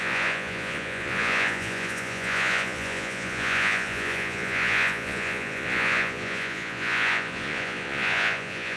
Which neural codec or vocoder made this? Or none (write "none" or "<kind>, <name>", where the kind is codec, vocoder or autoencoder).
vocoder, Vocos